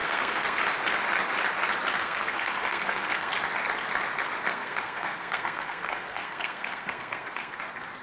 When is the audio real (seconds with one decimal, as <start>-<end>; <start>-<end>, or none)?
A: 0.6-2.0; 3.3-4.5; 7.6-8.0